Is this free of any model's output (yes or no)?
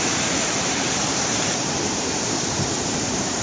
no